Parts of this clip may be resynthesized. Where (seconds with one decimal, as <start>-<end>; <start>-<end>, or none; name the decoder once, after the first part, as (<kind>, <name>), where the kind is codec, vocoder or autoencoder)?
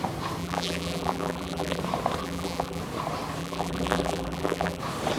0.4-1.8 (vocoder, BigVGAN v2); 2.2-2.8; 3.4-4.8